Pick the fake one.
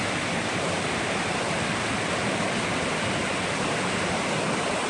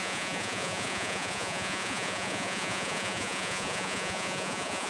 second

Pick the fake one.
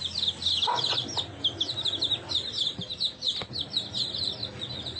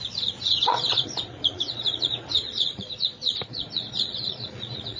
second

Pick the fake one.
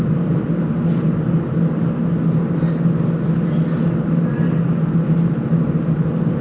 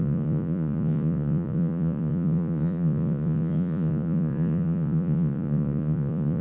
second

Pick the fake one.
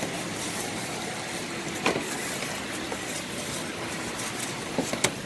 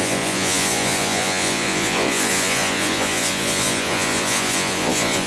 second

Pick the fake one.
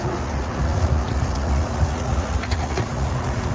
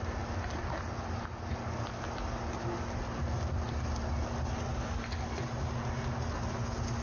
first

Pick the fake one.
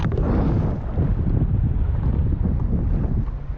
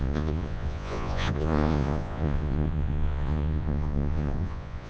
second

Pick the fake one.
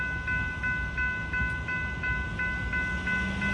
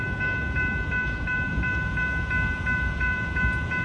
second